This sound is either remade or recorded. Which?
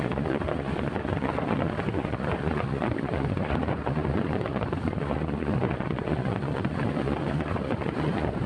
remade